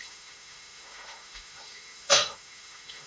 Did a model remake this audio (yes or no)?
yes